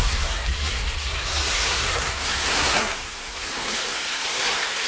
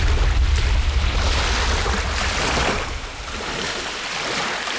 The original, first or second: second